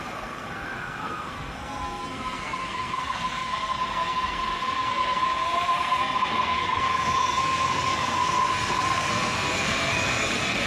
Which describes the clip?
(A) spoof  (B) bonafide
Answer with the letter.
A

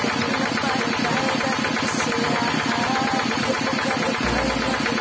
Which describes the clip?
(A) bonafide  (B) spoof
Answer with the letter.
A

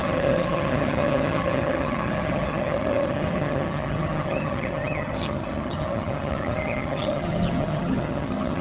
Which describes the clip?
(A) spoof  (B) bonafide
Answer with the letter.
A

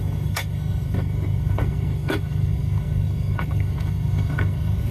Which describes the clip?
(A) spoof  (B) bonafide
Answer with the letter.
A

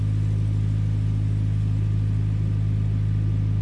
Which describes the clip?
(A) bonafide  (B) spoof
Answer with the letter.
A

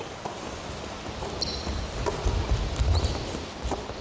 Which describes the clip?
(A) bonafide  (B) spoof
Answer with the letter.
A